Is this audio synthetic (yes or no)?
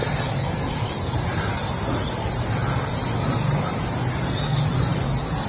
no